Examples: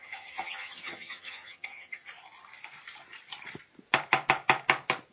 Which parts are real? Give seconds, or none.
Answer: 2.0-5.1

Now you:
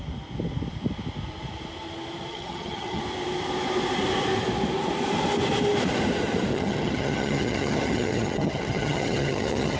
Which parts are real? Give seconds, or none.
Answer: 0.0-2.3; 3.0-6.5

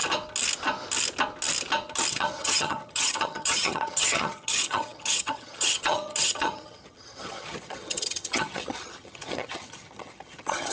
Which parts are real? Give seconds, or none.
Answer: 0.0-2.1